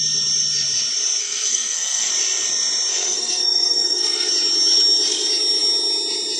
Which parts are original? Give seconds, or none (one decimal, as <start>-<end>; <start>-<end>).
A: 0.0-1.2; 2.1-2.9; 4.3-6.4